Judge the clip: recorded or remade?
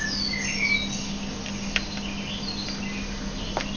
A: recorded